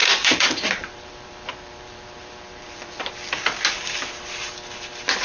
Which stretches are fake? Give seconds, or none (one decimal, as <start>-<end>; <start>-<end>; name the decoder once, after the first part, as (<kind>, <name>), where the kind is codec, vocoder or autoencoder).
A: 0.0-3.1 (vocoder, BigVGAN v2)